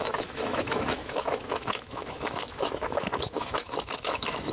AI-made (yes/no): yes